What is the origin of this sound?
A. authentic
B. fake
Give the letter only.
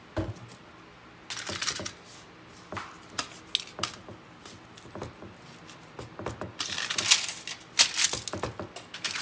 A